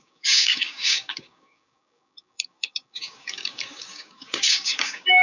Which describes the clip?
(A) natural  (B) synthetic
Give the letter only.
B